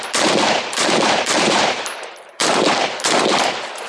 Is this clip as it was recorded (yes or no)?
no